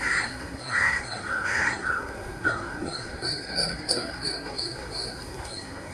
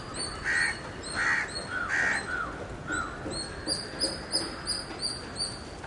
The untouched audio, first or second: second